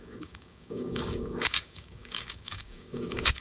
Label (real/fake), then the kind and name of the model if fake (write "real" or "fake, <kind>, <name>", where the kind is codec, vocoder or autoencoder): fake, codec, DAC